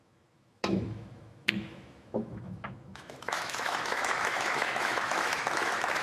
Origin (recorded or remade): remade